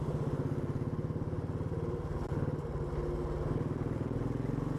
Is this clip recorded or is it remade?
recorded